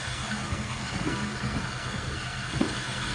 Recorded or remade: remade